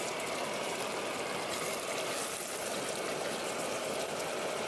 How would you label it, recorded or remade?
recorded